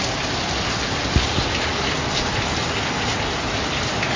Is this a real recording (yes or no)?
yes